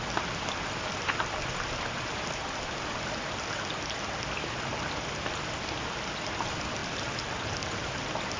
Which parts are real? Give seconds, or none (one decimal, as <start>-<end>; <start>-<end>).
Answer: 0.0-8.4